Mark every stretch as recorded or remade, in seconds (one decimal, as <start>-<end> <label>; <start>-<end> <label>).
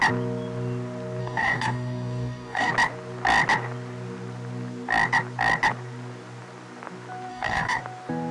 0.0-1.2 recorded; 1.2-2.7 remade; 2.7-7.3 recorded; 7.3-7.8 remade; 7.8-8.3 recorded